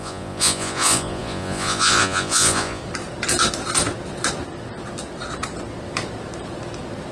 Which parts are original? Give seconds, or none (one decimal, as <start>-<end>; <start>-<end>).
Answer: 2.8-7.1